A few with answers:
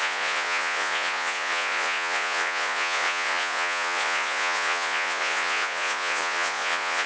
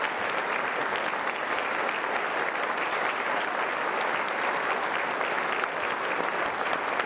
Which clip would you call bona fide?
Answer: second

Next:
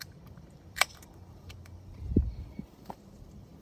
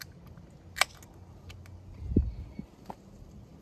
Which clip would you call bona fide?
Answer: second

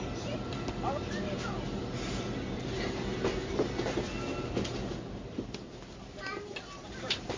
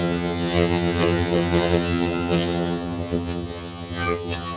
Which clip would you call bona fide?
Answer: first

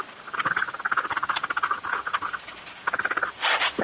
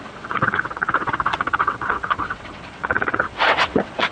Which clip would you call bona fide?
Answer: first